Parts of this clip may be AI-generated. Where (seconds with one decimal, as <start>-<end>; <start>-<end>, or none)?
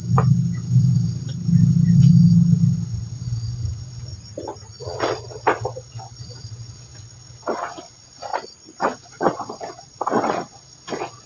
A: 0.0-4.1; 4.8-8.3; 8.8-11.3